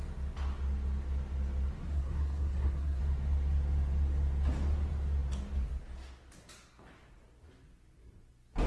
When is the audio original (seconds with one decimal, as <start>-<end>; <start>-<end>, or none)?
0.0-1.8; 3.0-8.7